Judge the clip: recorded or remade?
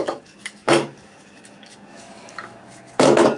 remade